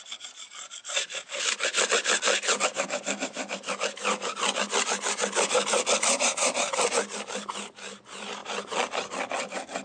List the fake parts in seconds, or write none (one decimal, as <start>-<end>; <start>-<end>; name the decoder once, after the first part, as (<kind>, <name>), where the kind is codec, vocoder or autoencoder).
none